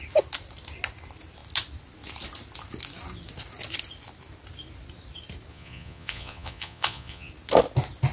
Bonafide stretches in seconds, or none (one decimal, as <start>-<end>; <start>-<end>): 0.0-5.5; 7.3-8.1